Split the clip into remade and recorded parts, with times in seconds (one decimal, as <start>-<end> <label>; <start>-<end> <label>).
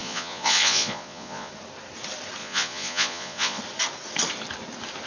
0.0-1.5 remade; 1.5-2.4 recorded; 2.4-3.6 remade; 3.6-5.1 recorded